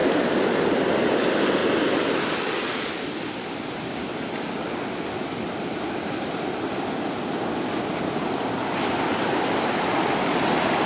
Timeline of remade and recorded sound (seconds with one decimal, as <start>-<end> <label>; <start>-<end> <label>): 0.0-10.9 recorded